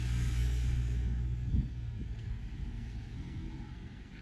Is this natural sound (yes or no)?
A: no